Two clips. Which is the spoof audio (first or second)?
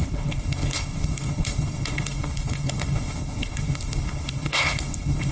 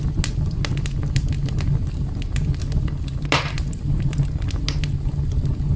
first